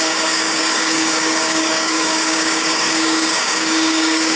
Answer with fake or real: fake